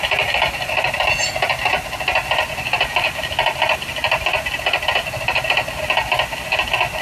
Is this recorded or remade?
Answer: recorded